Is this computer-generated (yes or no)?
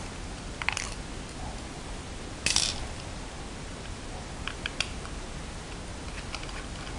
no